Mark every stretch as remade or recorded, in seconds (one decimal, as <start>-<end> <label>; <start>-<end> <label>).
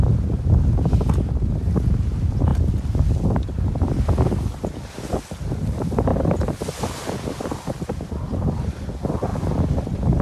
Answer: 0.0-10.2 recorded